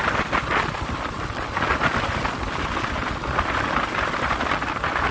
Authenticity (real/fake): real